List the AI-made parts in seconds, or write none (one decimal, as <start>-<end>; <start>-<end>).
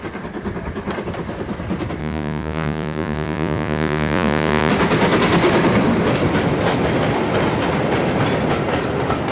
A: 2.0-4.7